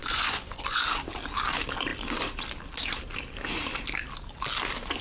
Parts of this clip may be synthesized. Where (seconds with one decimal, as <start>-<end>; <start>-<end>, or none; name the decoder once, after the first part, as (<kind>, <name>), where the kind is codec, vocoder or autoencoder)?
0.0-0.8 (vocoder, Vocos)